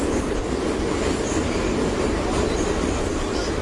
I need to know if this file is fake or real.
real